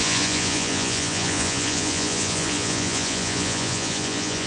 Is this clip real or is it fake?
fake